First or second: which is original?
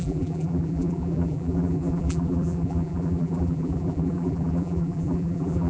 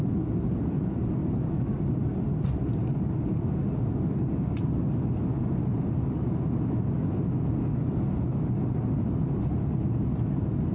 second